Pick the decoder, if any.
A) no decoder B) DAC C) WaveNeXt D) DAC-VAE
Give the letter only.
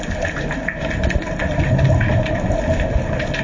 A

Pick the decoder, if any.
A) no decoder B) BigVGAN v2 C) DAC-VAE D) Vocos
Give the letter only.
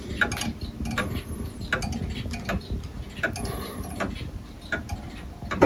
A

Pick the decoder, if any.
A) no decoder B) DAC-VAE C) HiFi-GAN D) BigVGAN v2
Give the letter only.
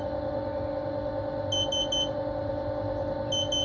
A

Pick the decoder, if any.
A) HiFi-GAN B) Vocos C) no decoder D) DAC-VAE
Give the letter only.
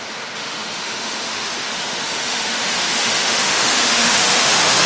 D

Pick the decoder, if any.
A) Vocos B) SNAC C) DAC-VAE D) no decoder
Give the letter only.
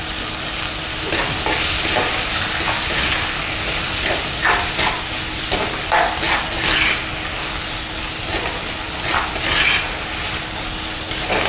D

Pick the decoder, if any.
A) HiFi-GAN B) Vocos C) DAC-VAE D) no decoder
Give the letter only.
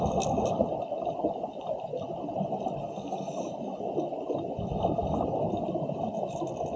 D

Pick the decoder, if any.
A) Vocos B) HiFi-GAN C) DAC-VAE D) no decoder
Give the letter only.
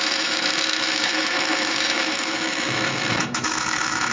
C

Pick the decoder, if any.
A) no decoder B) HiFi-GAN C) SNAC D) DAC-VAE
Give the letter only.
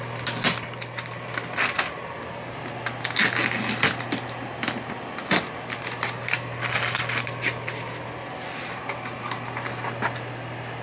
A